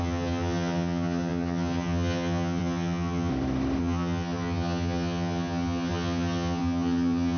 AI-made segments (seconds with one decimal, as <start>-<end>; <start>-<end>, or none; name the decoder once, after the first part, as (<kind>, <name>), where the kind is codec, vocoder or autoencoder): 0.0-3.3 (vocoder, HiFi-GAN); 3.8-7.4